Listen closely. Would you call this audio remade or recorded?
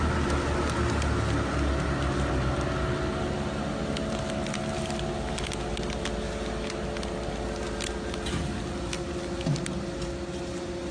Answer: recorded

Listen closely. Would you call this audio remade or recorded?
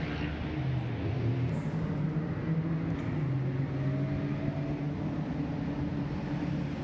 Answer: recorded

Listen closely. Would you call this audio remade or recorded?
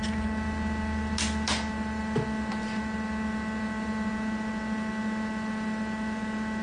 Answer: recorded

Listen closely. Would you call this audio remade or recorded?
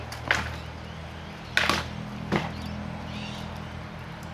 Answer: recorded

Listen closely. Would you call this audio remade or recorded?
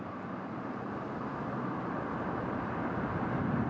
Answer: recorded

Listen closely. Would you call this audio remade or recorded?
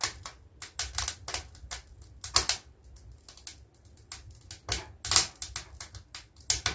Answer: recorded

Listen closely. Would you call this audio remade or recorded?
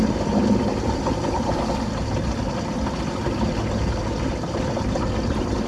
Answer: recorded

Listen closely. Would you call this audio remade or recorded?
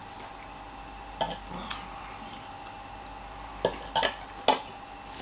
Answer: recorded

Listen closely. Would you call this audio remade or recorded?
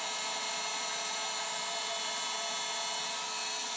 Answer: recorded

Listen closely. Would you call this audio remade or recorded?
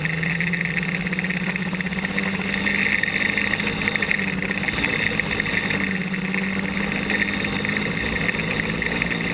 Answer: recorded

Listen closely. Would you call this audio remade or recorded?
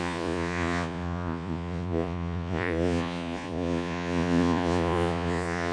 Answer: remade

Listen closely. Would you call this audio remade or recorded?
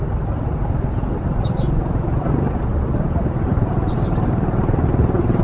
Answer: recorded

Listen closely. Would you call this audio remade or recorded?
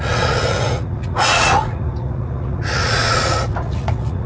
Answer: remade